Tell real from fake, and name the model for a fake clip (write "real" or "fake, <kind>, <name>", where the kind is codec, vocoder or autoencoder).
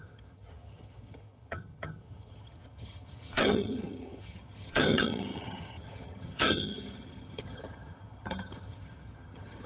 fake, vocoder, HiFi-GAN